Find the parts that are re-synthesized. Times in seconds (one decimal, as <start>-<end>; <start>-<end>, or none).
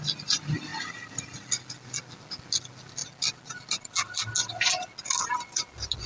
none